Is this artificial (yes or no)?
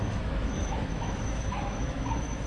yes